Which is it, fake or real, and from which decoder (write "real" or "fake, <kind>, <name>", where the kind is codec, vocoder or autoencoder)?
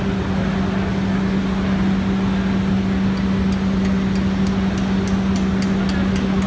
real